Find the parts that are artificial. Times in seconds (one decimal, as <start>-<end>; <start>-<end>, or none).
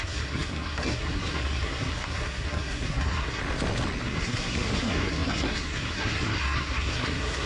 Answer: 0.0-3.4; 4.0-7.5